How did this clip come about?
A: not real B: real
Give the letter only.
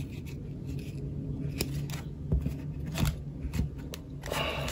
B